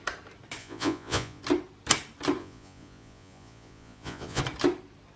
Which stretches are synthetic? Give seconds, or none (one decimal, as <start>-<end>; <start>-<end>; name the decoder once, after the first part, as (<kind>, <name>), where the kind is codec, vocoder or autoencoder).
0.6-1.4 (vocoder, Vocos); 2.4-4.4